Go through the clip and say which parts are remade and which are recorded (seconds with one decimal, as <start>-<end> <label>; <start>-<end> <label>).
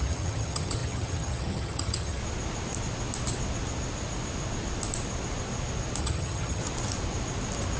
0.0-2.2 remade; 2.2-6.0 recorded; 6.0-6.6 remade; 6.6-7.8 recorded